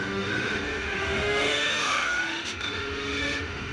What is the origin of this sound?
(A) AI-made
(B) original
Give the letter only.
A